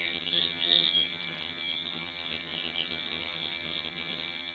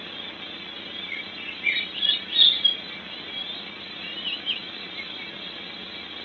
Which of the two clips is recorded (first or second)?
second